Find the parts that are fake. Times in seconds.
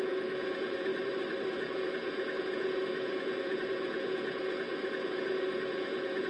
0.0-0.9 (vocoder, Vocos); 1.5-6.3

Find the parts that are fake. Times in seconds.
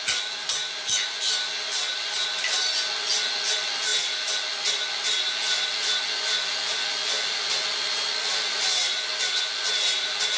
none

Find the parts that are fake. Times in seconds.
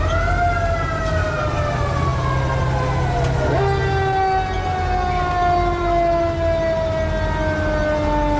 none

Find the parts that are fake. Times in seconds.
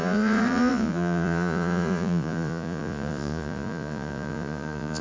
0.0-5.0 (vocoder, Vocos)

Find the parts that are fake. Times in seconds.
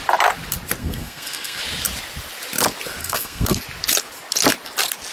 0.8-1.6 (codec, SNAC); 3.0-3.6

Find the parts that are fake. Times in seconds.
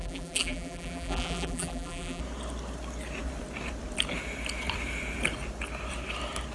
0.0-2.2 (vocoder, BigVGAN v2)